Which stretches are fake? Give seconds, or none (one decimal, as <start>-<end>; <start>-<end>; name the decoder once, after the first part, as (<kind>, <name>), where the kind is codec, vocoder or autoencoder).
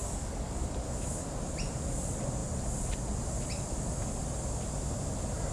0.0-0.7 (codec, DAC)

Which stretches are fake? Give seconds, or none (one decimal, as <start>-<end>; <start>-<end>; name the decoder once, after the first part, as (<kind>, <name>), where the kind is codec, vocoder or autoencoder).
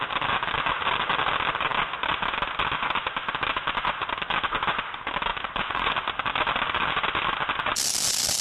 5.3-5.9 (vocoder, Vocos)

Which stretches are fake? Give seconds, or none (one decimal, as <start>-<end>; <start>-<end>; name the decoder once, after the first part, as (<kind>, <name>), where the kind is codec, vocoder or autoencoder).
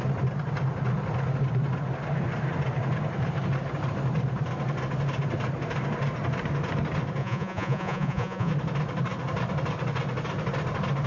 7.2-8.5 (vocoder, Vocos)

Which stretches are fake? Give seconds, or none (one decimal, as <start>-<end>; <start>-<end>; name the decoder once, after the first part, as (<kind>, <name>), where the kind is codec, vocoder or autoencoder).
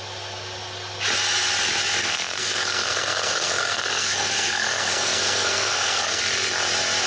2.0-6.2 (codec, SNAC)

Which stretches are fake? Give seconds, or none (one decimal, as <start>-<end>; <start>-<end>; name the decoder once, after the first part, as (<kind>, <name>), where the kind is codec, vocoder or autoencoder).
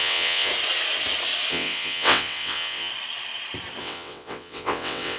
0.0-0.5 (vocoder, WaveNeXt); 1.5-2.9; 3.8-5.2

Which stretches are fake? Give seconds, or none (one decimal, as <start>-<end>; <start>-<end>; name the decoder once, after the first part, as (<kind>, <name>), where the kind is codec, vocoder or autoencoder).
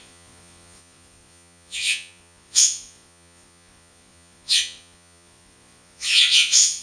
0.0-6.8 (vocoder, Vocos)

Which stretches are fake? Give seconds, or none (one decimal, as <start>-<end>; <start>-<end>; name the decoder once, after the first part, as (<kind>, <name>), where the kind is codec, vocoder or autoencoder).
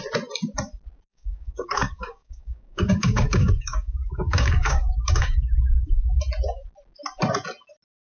1.1-5.9 (codec, DAC)